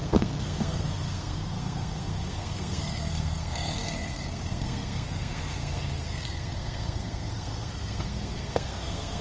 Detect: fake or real fake